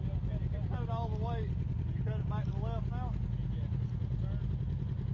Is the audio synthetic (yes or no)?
no